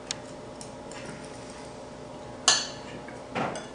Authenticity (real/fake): real